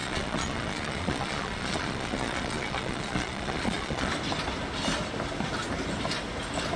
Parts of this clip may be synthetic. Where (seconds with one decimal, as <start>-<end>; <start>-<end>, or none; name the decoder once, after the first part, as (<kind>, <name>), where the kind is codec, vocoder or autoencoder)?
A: 0.0-4.1 (vocoder, Vocos)